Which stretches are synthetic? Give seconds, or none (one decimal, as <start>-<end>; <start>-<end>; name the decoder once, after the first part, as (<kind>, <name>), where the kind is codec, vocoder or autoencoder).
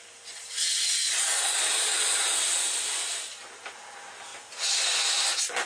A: none